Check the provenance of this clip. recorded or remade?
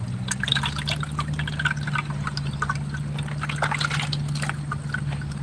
recorded